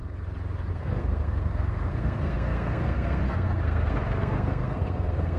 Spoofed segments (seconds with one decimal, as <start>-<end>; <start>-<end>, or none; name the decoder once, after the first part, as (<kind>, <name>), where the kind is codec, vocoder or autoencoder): 0.7-5.4 (codec, SNAC)